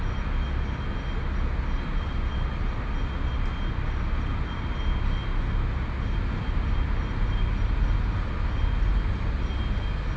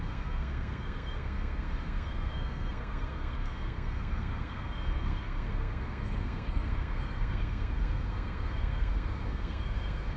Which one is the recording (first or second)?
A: first